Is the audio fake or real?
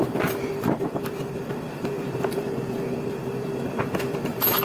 fake